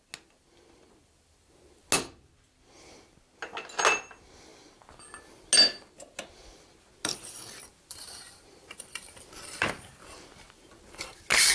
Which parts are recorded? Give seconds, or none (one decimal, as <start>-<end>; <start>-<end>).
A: 0.0-7.7; 10.7-11.5